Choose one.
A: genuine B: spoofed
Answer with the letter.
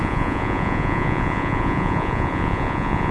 B